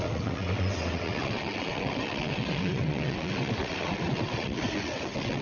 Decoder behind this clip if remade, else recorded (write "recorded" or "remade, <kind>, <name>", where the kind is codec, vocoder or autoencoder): remade, vocoder, WaveNeXt